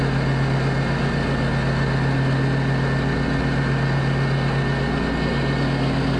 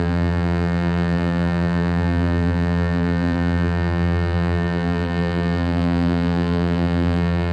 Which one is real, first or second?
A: first